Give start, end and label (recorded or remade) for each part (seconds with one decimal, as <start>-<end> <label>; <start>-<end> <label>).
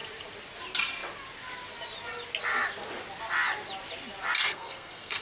0.0-4.4 recorded; 4.4-5.2 remade